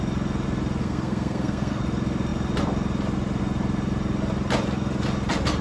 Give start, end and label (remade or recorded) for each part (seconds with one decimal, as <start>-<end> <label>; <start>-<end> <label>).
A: 0.0-0.8 recorded; 0.8-1.8 remade; 1.8-5.6 recorded